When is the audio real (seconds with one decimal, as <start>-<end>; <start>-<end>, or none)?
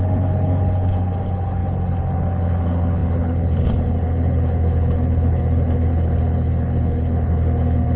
none